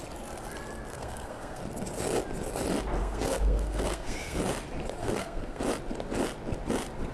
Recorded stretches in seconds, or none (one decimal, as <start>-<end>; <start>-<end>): 0.0-0.9; 1.6-3.0; 4.4-5.0; 5.6-7.1